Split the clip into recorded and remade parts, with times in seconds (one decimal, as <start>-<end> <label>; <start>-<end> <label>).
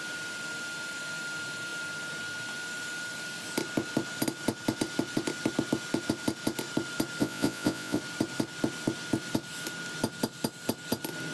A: 0.0-7.2 recorded; 7.2-8.0 remade; 8.0-11.3 recorded